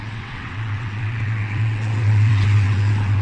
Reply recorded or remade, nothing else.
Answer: remade